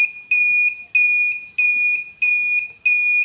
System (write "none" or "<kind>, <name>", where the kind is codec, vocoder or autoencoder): none